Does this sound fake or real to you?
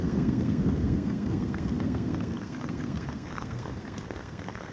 fake